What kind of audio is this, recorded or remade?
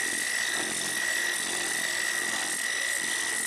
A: recorded